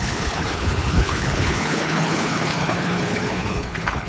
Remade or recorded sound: remade